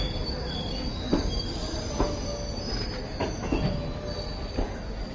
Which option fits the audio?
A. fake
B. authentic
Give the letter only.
B